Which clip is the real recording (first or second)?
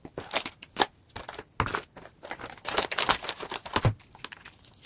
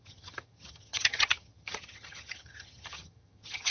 first